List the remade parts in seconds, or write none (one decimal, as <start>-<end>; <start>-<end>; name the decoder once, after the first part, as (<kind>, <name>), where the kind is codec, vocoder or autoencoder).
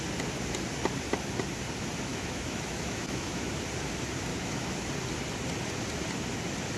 2.1-3.5 (autoencoder, DAC-VAE); 4.3-4.9